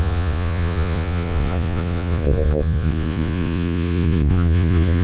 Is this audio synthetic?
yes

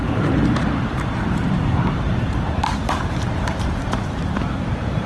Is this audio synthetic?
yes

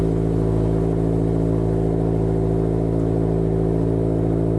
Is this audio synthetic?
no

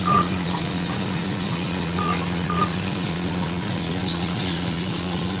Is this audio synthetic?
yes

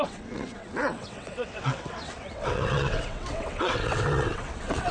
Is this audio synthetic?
yes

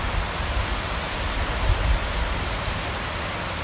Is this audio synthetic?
no